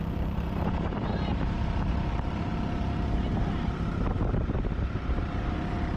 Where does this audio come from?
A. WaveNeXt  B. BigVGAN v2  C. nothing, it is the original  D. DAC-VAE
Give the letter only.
B